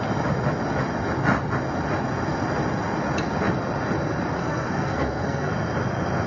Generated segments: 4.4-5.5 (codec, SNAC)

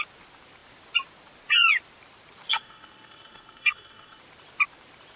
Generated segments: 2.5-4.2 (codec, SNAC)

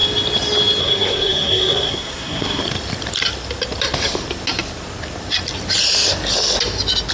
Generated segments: 0.8-2.6 (codec, SNAC)